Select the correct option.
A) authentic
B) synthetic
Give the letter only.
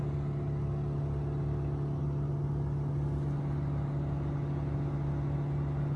A